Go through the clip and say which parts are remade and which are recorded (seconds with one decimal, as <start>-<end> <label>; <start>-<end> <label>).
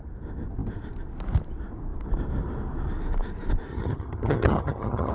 0.0-3.7 recorded; 3.7-5.1 remade